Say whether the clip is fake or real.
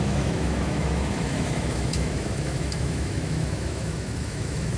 fake